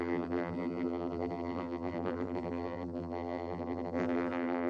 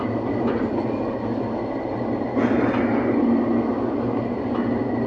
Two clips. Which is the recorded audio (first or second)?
second